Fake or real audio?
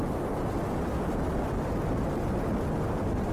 real